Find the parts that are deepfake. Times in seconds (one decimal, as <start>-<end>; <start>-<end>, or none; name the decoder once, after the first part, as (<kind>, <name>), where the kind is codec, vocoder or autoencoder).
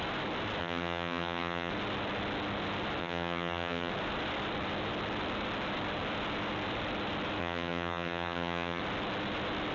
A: 0.6-1.7 (vocoder, HiFi-GAN); 3.0-3.9; 7.4-8.8